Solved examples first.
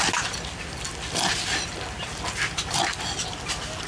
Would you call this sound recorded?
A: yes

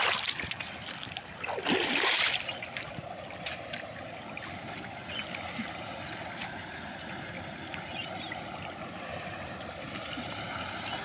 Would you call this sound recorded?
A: yes